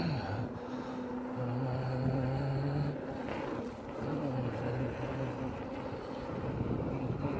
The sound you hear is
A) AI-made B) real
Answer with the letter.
B